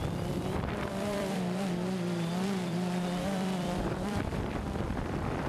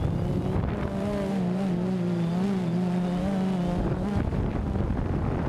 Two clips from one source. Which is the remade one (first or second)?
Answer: first